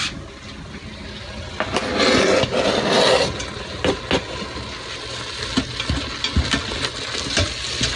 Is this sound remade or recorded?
recorded